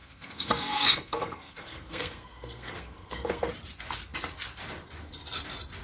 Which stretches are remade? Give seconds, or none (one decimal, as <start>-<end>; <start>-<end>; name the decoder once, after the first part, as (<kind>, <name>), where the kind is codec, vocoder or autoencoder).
0.0-3.5 (codec, SNAC)